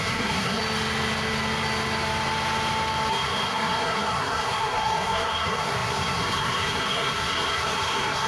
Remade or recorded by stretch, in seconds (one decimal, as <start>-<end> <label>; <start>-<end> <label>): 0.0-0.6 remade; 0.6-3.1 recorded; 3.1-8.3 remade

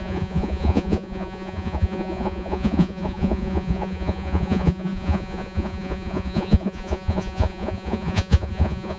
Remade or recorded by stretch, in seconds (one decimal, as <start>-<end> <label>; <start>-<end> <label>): 0.0-9.0 remade

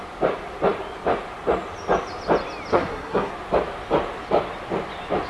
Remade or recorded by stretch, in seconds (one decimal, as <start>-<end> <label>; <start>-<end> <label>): 0.0-2.7 recorded; 2.7-3.3 remade; 3.3-5.3 recorded

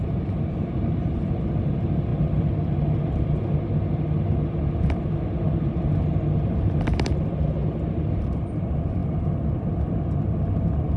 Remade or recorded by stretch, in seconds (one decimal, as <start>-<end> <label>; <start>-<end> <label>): 0.0-11.0 recorded

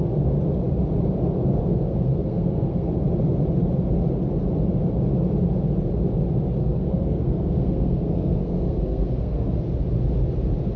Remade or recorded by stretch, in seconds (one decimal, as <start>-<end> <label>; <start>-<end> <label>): 0.0-1.6 recorded; 1.6-2.9 remade; 2.9-6.6 recorded; 6.6-9.6 remade; 9.6-10.8 recorded

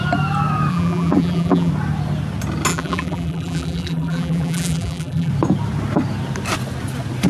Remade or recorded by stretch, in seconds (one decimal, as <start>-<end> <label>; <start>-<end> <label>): 0.0-0.7 recorded; 0.7-1.7 remade; 1.7-2.7 recorded; 2.7-5.3 remade; 5.3-7.3 recorded